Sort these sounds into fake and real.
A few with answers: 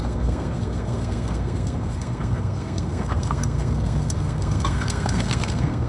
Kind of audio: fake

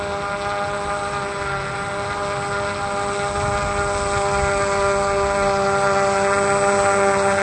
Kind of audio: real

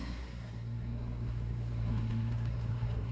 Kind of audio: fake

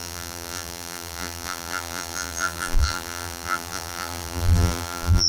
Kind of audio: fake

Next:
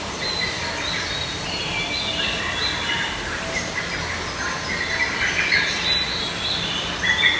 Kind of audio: real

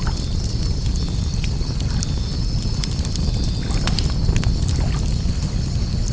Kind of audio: real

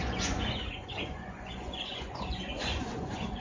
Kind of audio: fake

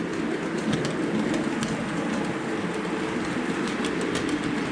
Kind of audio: real